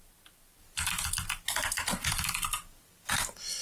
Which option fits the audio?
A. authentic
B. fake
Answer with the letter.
A